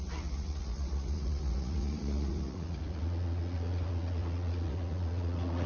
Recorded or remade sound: remade